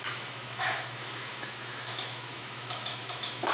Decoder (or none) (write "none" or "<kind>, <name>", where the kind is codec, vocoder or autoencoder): autoencoder, DAC-VAE